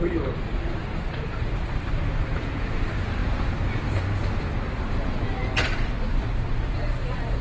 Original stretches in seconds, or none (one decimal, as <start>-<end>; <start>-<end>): 0.8-1.4; 5.4-6.0